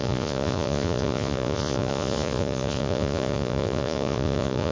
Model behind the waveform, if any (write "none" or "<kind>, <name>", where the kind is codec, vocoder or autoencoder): vocoder, Vocos